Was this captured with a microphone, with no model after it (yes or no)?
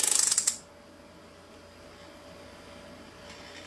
yes